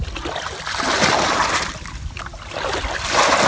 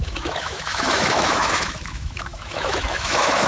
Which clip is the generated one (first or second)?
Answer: second